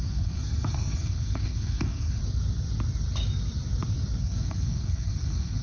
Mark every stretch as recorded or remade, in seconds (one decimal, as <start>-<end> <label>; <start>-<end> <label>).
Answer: 0.0-2.2 remade; 2.2-4.2 recorded; 4.2-5.6 remade